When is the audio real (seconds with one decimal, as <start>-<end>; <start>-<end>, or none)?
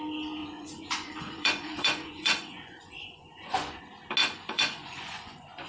0.0-0.4; 3.8-4.2